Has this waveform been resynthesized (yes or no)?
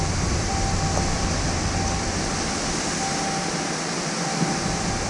no